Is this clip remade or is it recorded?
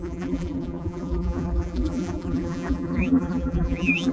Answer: remade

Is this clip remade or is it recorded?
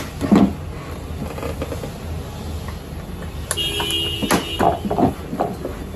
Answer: recorded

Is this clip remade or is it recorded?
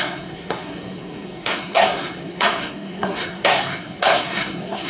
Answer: remade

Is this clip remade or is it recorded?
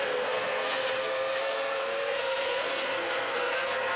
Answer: remade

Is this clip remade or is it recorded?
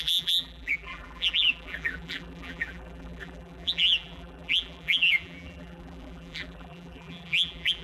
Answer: remade